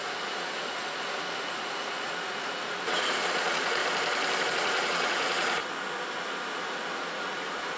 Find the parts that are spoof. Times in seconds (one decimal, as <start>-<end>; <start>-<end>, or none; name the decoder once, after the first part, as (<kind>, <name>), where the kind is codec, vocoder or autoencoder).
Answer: 0.0-3.8 (vocoder, Vocos); 4.4-5.6; 6.5-7.8